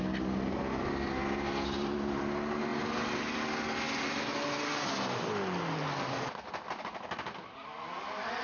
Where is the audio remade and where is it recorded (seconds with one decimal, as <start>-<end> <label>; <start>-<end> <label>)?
0.0-8.4 recorded